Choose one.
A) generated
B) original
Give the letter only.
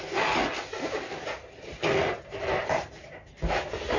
B